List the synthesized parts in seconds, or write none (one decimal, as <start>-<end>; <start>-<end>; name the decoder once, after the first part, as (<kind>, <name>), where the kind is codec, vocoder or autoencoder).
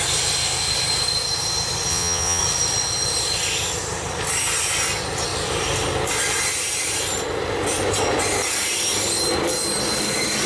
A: 1.9-2.4 (vocoder, Vocos)